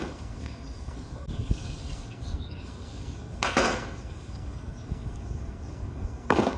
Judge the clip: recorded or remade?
remade